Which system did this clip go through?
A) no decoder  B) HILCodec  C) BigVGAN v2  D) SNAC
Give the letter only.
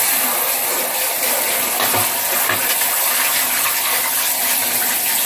A